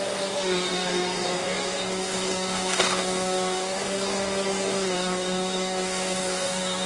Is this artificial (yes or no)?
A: yes